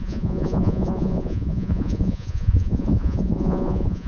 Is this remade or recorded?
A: remade